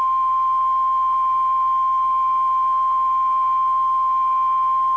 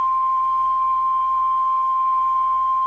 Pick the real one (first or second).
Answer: first